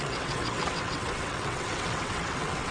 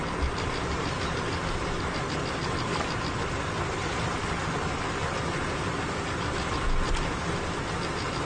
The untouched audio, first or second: second